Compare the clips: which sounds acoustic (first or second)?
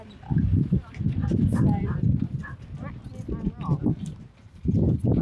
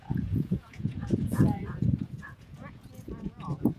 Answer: first